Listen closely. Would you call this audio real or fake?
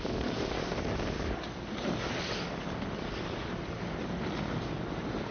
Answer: real